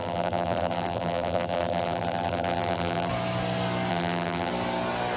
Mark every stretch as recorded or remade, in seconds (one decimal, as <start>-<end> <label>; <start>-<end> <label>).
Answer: 0.0-3.1 remade; 3.1-3.9 recorded; 3.9-4.5 remade; 4.5-5.2 recorded